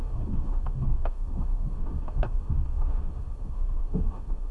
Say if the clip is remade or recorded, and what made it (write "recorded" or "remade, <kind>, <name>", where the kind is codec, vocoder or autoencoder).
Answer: remade, autoencoder, DAC-VAE